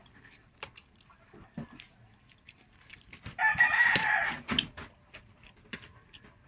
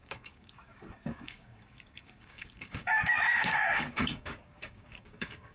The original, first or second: first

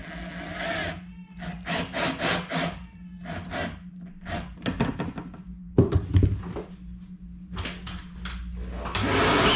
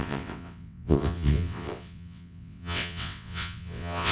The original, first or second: first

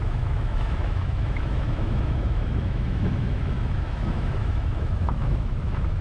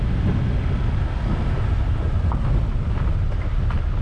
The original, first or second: second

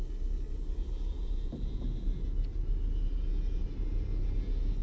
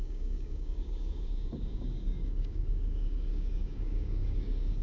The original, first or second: first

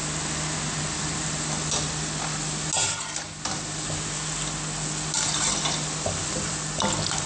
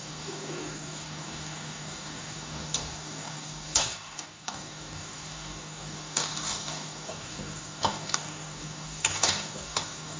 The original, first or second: first